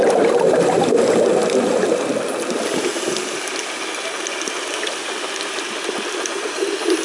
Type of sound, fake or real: real